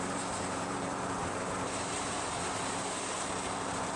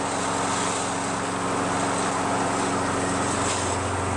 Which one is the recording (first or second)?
second